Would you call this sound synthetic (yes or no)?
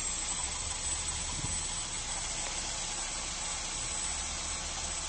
no